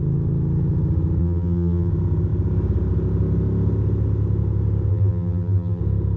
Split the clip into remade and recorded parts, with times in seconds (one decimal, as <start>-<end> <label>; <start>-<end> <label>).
0.0-1.2 recorded; 1.2-1.9 remade; 1.9-4.9 recorded; 4.9-5.8 remade; 5.8-6.2 recorded